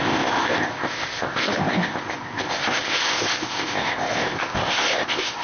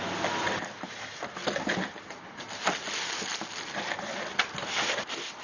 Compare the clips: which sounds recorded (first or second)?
second